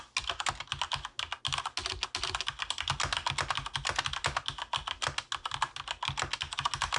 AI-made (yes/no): no